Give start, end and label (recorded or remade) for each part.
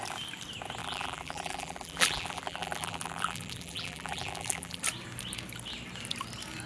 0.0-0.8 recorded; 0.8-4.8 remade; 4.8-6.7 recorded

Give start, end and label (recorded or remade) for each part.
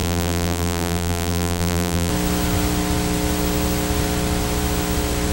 0.0-2.1 remade; 2.1-5.3 recorded